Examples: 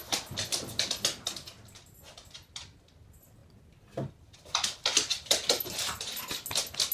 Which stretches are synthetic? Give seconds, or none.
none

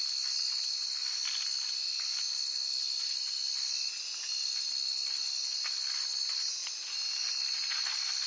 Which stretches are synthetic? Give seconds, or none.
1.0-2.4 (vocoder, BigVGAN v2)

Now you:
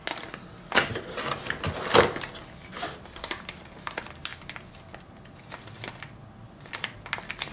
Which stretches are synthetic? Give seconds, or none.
none